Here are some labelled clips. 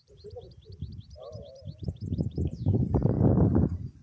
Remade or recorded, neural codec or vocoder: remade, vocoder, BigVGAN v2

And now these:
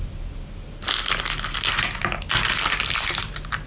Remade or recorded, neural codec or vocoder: recorded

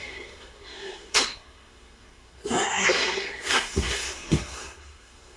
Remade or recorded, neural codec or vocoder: remade, codec, SNAC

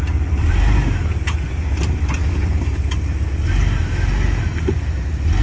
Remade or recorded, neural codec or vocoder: recorded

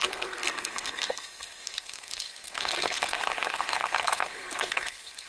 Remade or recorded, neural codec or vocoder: remade, codec, SNAC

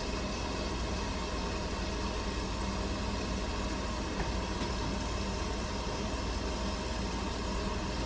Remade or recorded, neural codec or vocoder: recorded